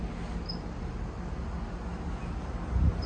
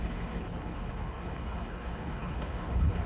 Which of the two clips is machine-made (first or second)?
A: second